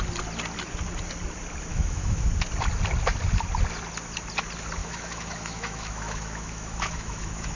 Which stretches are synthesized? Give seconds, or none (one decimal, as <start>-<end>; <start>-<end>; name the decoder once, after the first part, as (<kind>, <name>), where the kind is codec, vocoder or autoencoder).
1.7-2.3 (autoencoder, DAC-VAE); 4.8-7.6